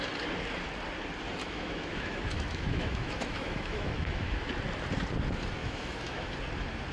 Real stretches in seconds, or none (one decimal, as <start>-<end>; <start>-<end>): 0.0-1.4; 4.5-5.6; 6.3-6.9